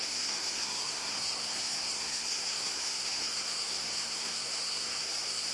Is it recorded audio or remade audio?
remade